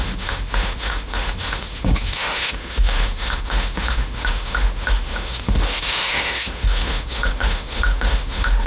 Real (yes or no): no